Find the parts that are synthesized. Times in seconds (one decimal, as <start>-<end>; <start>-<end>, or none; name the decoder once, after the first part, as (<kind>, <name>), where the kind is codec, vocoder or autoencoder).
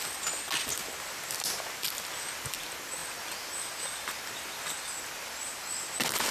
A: none